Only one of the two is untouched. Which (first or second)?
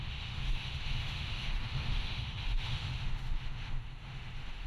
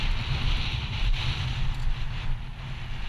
second